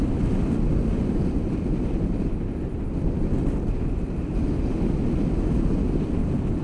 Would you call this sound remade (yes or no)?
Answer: no